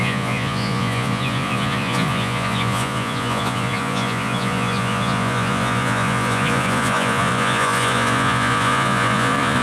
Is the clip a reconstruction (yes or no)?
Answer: yes